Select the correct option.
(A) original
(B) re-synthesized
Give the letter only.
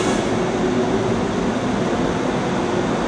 A